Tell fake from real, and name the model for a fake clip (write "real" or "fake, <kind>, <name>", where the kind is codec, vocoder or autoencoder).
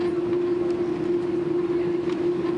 real